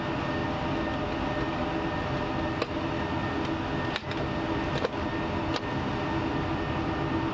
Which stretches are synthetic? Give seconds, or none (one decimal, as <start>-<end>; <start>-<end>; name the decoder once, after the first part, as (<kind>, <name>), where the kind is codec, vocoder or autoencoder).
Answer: none

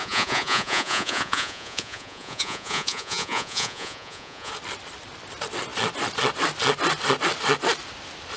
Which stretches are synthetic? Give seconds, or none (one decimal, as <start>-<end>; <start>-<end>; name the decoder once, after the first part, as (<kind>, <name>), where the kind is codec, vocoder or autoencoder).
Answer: 0.0-4.5 (vocoder, Vocos)

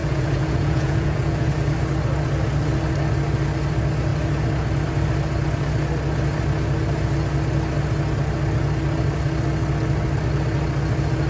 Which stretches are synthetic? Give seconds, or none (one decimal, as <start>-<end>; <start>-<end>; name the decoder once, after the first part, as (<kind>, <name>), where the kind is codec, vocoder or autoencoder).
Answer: 0.0-1.5 (vocoder, Vocos)

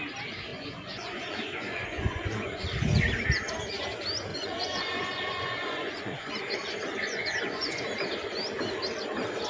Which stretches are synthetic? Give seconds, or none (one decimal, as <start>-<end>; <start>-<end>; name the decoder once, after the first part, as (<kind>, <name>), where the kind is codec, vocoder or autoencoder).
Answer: 0.5-2.6 (vocoder, Vocos); 4.3-6.3; 7.0-7.8

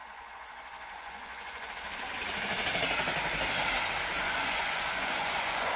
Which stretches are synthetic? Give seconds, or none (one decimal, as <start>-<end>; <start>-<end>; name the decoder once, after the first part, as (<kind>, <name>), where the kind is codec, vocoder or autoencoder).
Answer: 0.0-1.7 (vocoder, Vocos); 4.1-5.8

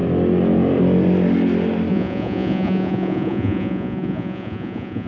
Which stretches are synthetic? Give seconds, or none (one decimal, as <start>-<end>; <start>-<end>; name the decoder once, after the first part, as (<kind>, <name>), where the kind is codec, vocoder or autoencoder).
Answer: 1.9-5.1 (vocoder, Vocos)

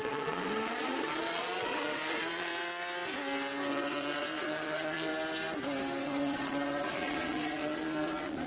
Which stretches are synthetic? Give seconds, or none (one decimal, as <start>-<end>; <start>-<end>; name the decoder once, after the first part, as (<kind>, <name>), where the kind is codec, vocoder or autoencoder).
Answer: 0.0-2.5 (vocoder, Vocos); 3.7-5.1; 6.0-8.5

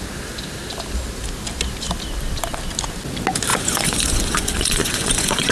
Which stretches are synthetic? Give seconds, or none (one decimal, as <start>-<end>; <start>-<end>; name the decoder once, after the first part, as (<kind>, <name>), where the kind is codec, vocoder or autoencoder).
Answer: 3.5-5.5 (vocoder, Vocos)